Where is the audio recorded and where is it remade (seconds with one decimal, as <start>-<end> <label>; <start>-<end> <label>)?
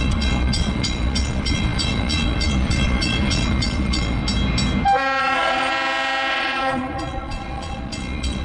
0.0-4.2 remade; 4.2-5.2 recorded; 5.2-5.7 remade; 5.7-6.3 recorded; 6.3-8.4 remade